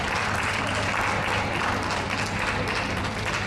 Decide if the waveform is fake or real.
real